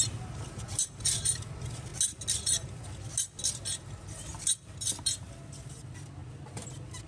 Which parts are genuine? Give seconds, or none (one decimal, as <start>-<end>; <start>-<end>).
0.0-7.1